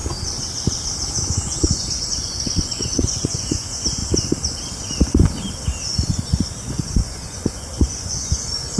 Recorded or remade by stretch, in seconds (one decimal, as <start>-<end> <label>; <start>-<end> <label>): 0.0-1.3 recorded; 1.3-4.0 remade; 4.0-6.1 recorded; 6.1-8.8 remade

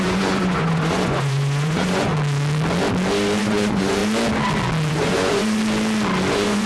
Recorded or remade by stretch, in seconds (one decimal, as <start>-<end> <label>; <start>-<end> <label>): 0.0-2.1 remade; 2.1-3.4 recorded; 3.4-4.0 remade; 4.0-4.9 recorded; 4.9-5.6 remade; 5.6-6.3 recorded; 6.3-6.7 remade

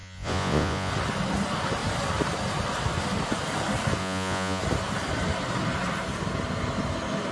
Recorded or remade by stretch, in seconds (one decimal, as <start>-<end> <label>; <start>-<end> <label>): 0.0-0.9 remade; 0.9-4.0 recorded; 4.0-4.6 remade; 4.6-7.3 recorded

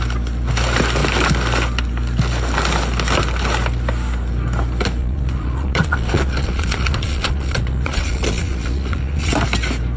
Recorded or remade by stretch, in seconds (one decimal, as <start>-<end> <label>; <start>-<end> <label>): 0.0-5.0 recorded; 5.0-9.3 remade; 9.3-10.0 recorded